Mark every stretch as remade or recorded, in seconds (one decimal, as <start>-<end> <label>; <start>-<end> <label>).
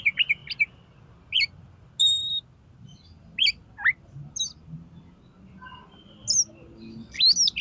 0.0-7.6 recorded